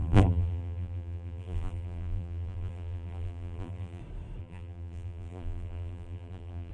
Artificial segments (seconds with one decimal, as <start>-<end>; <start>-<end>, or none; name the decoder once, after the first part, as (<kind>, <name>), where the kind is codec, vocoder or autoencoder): 0.0-4.0 (vocoder, BigVGAN v2); 4.4-6.7